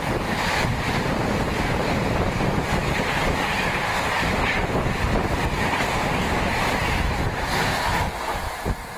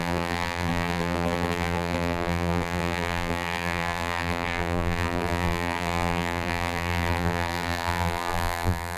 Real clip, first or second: first